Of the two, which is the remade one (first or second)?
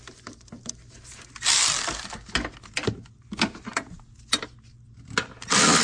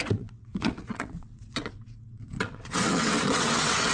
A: second